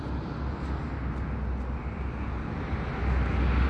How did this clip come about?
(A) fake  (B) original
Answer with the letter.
B